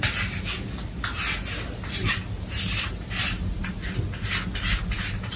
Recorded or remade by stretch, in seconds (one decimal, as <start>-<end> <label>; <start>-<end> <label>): 0.0-1.2 recorded; 1.2-3.7 remade; 3.7-5.4 recorded